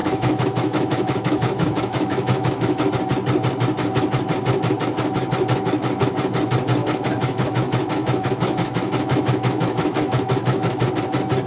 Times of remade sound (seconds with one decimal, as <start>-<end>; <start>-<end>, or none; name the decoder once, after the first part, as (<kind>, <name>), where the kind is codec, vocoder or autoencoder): 0.0-2.9 (autoencoder, DAC-VAE); 6.8-10.9